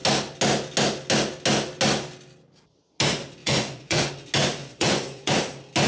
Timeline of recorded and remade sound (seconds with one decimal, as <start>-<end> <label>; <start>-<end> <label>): 0.0-3.4 recorded; 3.4-4.1 remade; 4.1-4.6 recorded; 4.6-5.3 remade; 5.3-5.9 recorded